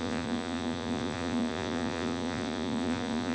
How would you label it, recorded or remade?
remade